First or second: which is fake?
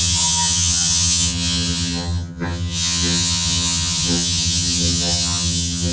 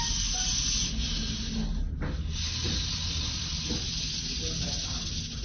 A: first